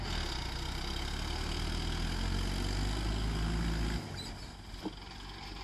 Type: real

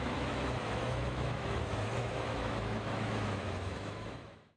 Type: fake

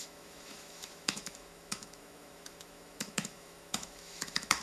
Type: fake